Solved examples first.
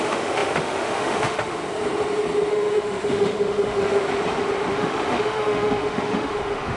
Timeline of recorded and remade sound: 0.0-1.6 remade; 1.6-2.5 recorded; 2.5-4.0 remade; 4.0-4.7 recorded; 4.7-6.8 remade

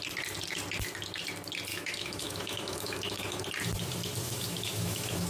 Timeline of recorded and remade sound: 0.0-1.7 recorded; 1.7-3.4 remade; 3.4-4.2 recorded; 4.2-5.3 remade